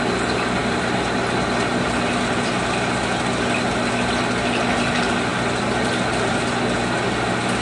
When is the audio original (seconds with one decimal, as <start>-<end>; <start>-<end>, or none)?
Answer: 0.0-7.6